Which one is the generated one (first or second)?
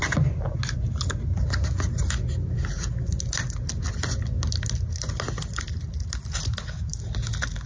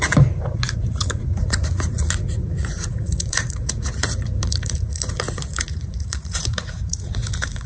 second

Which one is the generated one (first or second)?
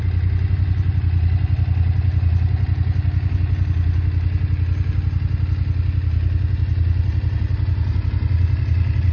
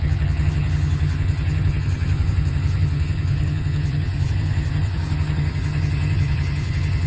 second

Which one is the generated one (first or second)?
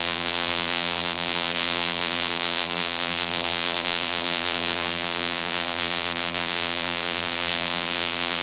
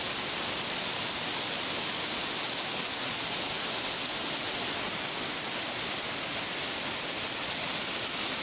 first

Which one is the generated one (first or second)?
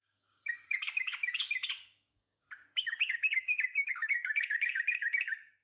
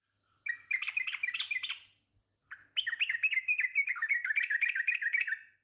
first